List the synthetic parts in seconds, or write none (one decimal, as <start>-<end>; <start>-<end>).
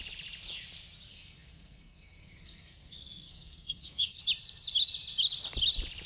1.1-4.2